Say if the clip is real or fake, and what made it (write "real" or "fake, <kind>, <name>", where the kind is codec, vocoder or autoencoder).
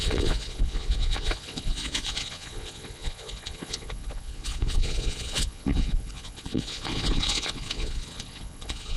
fake, vocoder, Vocos